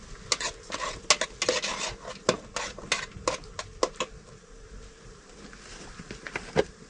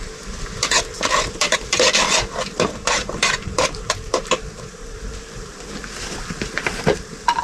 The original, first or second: first